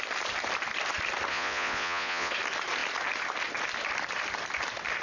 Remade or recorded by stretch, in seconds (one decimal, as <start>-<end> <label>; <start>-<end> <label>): 0.0-1.3 recorded; 1.3-2.3 remade; 2.3-5.0 recorded